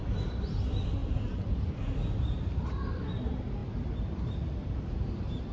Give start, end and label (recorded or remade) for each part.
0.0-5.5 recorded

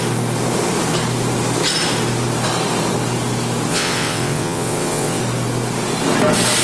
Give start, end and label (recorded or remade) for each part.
0.0-3.7 recorded; 3.7-5.2 remade; 5.2-6.6 recorded

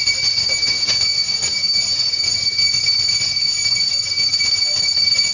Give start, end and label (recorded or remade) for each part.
0.0-5.3 recorded

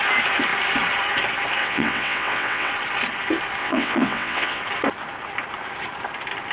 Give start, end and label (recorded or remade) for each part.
0.0-1.6 recorded; 1.6-2.7 remade; 2.7-3.6 recorded; 3.6-4.6 remade; 4.6-6.5 recorded